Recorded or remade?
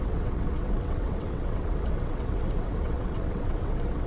remade